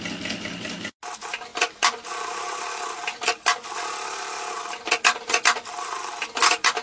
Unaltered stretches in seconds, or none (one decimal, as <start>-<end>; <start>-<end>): 0.0-6.8